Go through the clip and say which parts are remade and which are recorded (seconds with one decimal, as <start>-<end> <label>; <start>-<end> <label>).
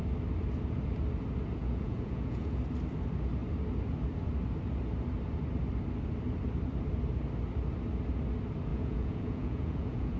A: 0.0-1.6 recorded; 1.6-2.6 remade; 2.6-8.7 recorded; 8.7-10.2 remade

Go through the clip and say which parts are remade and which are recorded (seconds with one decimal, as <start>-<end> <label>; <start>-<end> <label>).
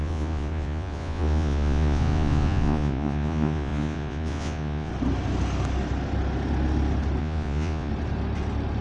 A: 0.0-4.9 remade; 4.9-7.2 recorded; 7.2-7.9 remade; 7.9-8.8 recorded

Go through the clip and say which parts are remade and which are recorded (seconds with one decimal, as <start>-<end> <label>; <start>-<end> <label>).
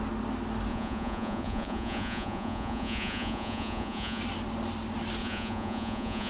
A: 0.0-0.7 recorded; 0.7-4.2 remade; 4.2-5.2 recorded; 5.2-6.3 remade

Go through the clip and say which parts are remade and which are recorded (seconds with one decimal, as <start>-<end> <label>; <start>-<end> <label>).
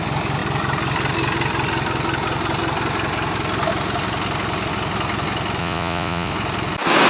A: 0.0-5.6 recorded; 5.6-6.3 remade; 6.3-7.1 recorded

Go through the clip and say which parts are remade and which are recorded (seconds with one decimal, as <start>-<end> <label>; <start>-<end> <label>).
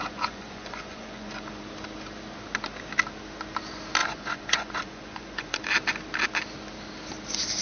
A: 0.0-1.6 remade; 1.6-4.0 recorded; 4.0-5.7 remade; 5.7-7.6 recorded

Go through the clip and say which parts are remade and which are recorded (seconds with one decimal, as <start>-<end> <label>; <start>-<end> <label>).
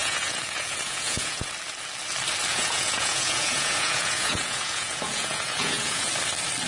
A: 0.0-1.5 remade; 1.5-2.5 recorded; 2.5-6.1 remade; 6.1-6.7 recorded